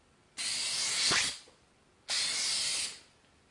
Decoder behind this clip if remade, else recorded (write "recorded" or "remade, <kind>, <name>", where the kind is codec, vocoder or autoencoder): recorded